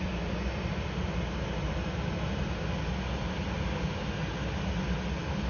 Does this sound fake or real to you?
real